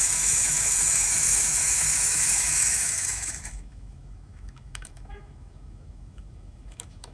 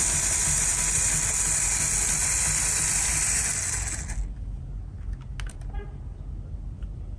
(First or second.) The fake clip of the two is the first